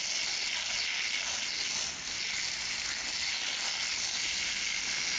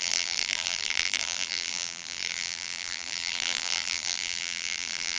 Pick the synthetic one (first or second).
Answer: second